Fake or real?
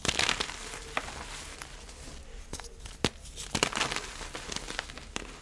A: real